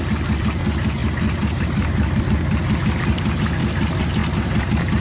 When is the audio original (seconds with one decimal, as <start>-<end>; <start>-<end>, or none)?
0.0-1.0; 2.2-5.0